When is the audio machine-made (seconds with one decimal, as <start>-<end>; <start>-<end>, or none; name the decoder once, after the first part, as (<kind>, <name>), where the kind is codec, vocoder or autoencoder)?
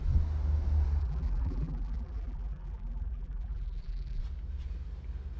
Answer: 1.0-4.2 (vocoder, BigVGAN v2)